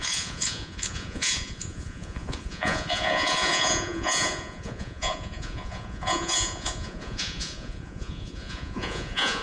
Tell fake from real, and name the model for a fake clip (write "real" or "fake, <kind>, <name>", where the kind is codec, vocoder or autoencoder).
fake, vocoder, Vocos